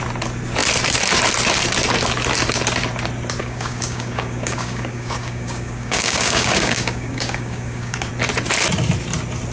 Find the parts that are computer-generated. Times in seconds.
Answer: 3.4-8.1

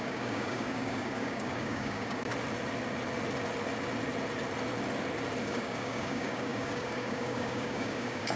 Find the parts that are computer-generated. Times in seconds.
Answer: 0.0-2.3; 5.4-8.4

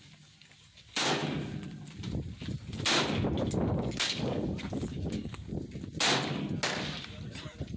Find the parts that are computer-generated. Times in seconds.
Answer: 0.0-1.2; 3.8-5.5

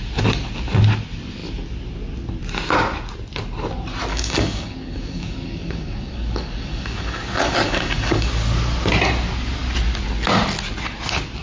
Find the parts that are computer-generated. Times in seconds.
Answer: 4.1-8.3